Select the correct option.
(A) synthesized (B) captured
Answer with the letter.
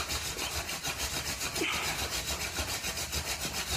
B